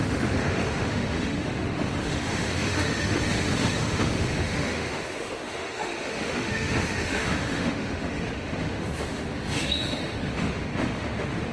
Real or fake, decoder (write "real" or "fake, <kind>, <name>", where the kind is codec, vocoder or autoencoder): fake, autoencoder, DAC-VAE